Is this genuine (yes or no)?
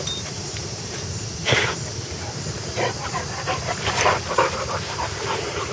no